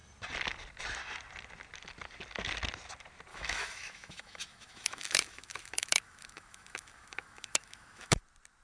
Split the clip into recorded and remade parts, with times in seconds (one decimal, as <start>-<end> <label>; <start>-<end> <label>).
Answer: 0.0-3.3 recorded; 3.3-8.2 remade; 8.2-8.6 recorded

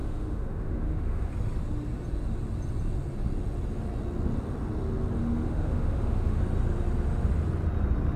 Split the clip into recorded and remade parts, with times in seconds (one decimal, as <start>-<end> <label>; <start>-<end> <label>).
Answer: 0.0-1.3 remade; 1.3-5.2 recorded; 5.2-6.4 remade; 6.4-8.2 recorded